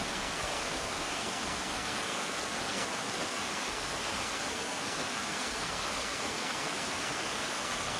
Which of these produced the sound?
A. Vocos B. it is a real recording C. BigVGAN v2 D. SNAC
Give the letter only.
D